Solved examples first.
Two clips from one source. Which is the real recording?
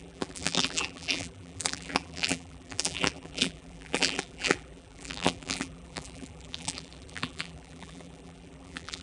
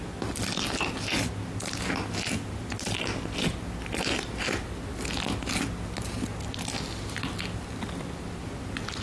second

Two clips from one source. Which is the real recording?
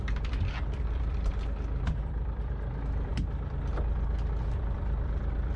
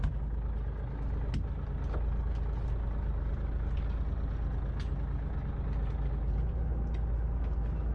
second